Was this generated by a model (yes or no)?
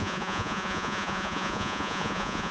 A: yes